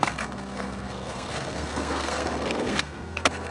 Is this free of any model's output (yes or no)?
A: no